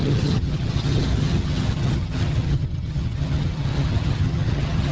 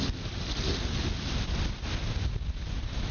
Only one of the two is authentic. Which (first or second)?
second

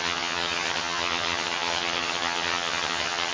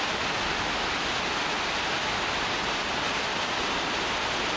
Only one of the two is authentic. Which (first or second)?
second